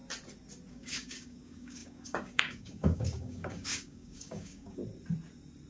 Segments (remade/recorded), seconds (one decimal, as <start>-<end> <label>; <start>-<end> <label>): 0.0-0.7 recorded; 0.7-4.8 remade; 4.8-5.7 recorded